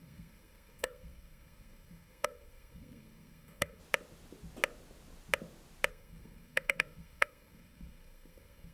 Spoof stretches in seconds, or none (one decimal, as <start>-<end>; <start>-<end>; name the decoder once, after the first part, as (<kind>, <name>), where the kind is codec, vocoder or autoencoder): 0.0-3.8 (codec, SNAC); 5.9-8.7